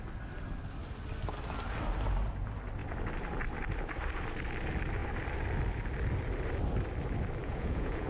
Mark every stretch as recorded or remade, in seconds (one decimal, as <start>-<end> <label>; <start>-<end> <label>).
0.0-7.4 recorded; 7.4-8.1 remade